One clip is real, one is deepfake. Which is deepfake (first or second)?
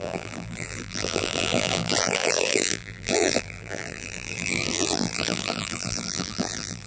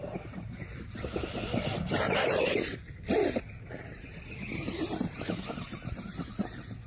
first